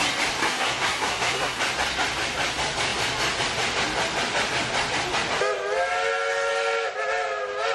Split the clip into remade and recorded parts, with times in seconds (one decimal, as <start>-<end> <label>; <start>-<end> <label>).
0.0-0.4 recorded; 0.4-1.6 remade; 1.6-7.7 recorded